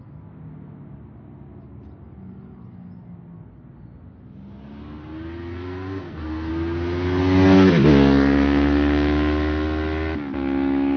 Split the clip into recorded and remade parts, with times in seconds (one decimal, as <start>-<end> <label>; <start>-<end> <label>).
0.0-5.5 recorded; 5.5-6.5 remade; 6.5-11.0 recorded